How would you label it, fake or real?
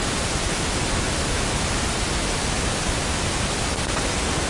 real